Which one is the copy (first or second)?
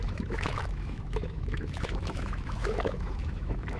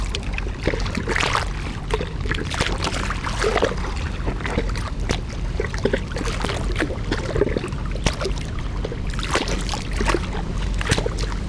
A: first